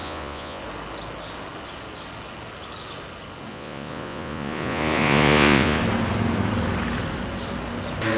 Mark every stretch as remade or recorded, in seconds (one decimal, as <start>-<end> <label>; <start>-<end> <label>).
0.0-0.6 remade; 0.6-3.5 recorded; 3.5-5.8 remade; 5.8-8.2 recorded